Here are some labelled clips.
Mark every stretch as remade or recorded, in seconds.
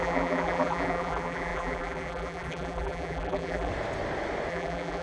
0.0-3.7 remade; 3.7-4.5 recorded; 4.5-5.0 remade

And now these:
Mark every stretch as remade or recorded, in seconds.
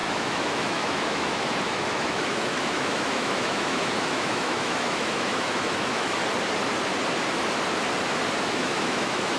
0.0-6.2 remade; 6.2-8.4 recorded; 8.4-9.4 remade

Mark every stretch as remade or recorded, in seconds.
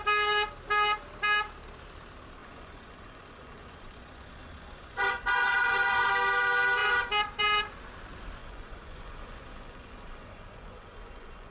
0.0-2.4 recorded; 2.4-6.1 remade; 6.1-8.4 recorded; 8.4-11.5 remade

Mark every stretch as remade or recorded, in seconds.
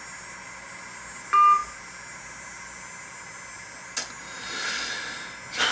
0.0-5.7 recorded